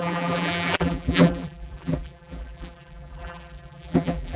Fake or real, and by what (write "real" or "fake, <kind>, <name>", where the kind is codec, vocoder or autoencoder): fake, vocoder, BigVGAN v2